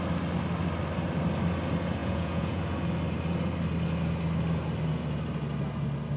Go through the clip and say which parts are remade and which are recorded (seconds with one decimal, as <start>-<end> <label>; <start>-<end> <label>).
0.0-2.0 recorded; 2.0-2.6 remade; 2.6-6.2 recorded